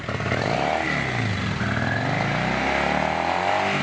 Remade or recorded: recorded